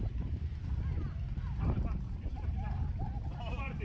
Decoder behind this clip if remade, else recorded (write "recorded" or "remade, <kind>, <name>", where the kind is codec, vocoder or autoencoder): remade, vocoder, BigVGAN v2